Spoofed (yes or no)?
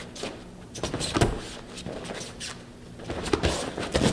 no